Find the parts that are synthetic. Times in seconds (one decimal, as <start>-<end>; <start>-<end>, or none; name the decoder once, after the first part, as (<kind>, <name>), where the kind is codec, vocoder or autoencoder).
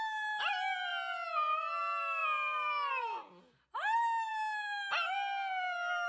none